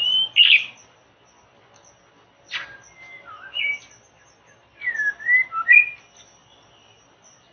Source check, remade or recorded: recorded